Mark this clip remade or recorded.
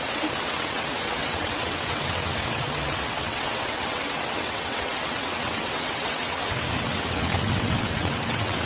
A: remade